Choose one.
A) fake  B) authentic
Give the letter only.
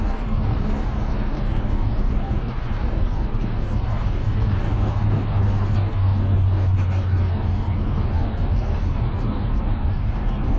A